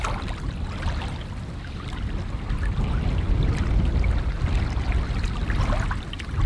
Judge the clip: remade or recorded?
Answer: recorded